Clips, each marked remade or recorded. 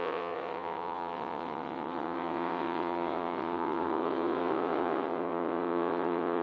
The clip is remade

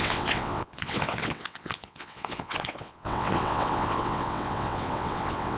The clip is remade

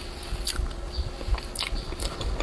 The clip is recorded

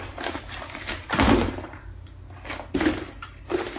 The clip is recorded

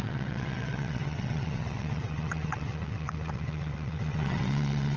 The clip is remade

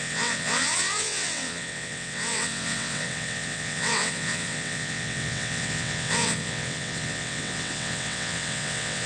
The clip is remade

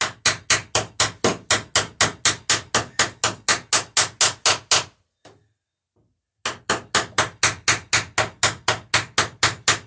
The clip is recorded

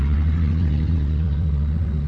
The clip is remade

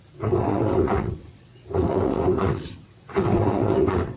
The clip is remade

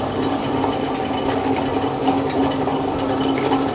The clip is recorded